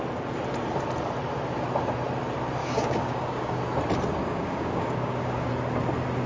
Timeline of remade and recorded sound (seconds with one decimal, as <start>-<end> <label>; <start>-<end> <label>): 0.0-2.6 recorded; 2.6-3.6 remade; 3.6-4.2 recorded; 4.2-5.5 remade; 5.5-6.3 recorded